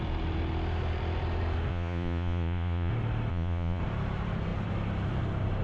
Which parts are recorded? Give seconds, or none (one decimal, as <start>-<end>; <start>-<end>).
0.0-1.7; 2.9-3.3; 3.8-5.6